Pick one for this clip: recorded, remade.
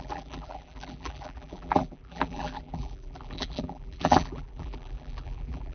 remade